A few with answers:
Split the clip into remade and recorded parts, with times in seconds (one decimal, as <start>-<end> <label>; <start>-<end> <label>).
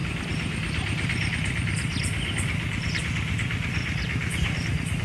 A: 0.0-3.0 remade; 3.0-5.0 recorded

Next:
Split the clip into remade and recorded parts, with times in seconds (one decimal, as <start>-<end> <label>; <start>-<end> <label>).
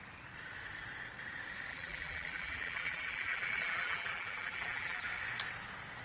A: 0.0-1.7 recorded; 1.7-5.1 remade; 5.1-6.0 recorded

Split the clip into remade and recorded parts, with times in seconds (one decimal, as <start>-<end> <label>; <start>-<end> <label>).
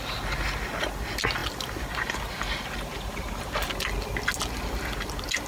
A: 0.0-5.5 recorded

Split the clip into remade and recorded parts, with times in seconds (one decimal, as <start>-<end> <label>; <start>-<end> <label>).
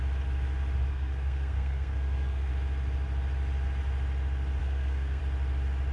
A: 0.0-0.9 recorded; 0.9-2.5 remade; 2.5-4.6 recorded; 4.6-5.2 remade; 5.2-5.9 recorded